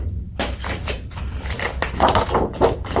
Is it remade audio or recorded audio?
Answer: recorded